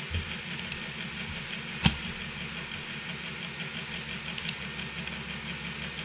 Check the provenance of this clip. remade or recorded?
recorded